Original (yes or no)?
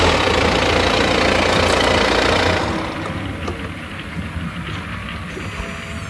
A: yes